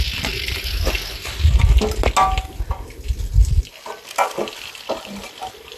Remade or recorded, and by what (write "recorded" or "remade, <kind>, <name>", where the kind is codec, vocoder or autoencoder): recorded